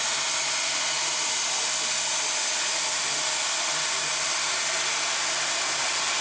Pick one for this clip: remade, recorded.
recorded